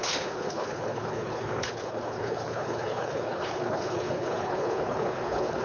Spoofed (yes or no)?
yes